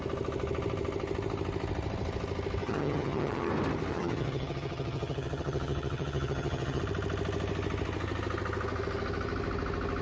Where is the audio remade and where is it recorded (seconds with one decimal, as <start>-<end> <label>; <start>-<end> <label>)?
0.0-2.6 recorded; 2.6-3.5 remade; 3.5-3.9 recorded; 3.9-6.8 remade; 6.8-10.0 recorded